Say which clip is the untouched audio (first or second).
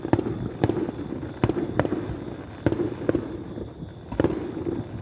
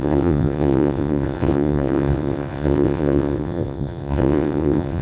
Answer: first